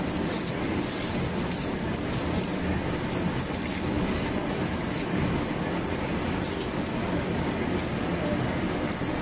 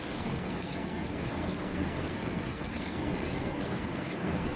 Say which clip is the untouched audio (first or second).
first